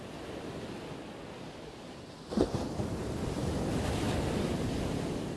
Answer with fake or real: real